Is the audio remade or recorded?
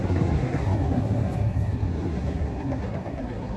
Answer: remade